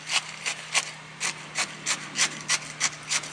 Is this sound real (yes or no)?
yes